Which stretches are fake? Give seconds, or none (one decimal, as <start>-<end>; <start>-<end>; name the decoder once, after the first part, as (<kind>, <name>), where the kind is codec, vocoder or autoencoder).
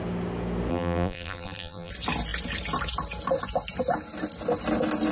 0.7-1.9 (vocoder, BigVGAN v2)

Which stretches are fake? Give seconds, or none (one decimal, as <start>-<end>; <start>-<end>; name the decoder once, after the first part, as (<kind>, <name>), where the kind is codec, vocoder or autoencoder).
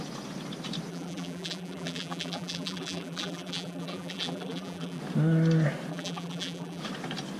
0.9-5.0 (vocoder, BigVGAN v2); 5.9-6.8